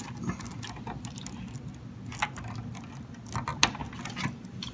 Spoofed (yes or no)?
no